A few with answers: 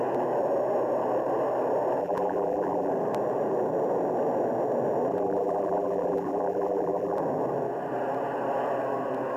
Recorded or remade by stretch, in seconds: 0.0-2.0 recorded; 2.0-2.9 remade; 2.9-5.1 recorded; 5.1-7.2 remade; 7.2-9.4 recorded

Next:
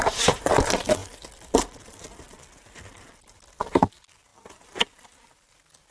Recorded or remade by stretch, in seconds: 0.0-4.3 recorded; 4.3-5.5 remade; 5.5-5.9 recorded

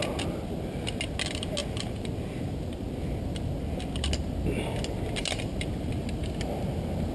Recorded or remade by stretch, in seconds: 0.0-7.1 recorded

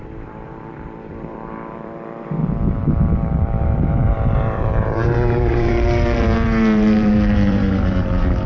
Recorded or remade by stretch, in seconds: 0.0-2.4 remade; 2.4-3.6 recorded; 3.6-8.5 remade

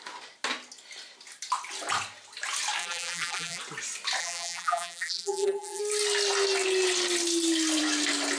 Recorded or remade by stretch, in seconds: 0.0-2.8 recorded; 2.8-3.6 remade; 3.6-4.2 recorded; 4.2-5.8 remade; 5.8-8.4 recorded

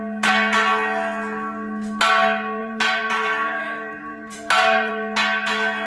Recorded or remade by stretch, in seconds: 0.0-2.6 recorded; 2.6-4.9 remade; 4.9-5.9 recorded

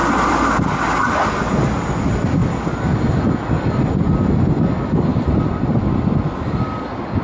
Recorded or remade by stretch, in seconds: 0.0-7.2 recorded